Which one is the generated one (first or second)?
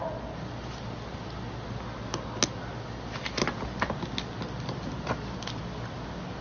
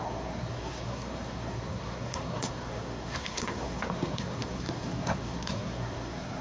second